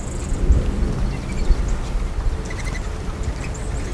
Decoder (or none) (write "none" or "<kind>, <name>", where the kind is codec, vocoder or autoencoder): none